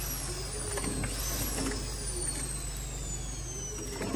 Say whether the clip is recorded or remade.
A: recorded